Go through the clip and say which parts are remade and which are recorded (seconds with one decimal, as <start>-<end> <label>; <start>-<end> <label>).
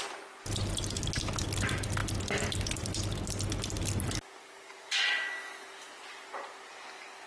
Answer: 0.0-7.3 recorded